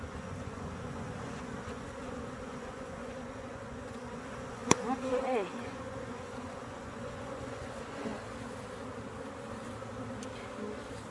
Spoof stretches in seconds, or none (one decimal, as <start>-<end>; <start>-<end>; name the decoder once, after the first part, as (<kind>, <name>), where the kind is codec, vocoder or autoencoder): 0.0-8.1 (vocoder, Vocos)